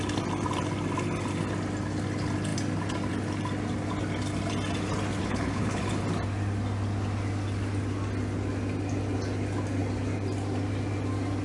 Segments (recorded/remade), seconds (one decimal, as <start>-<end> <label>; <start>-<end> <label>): 0.0-5.2 recorded; 5.2-5.9 remade; 5.9-11.4 recorded